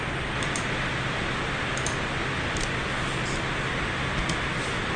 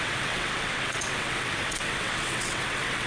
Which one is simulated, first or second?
second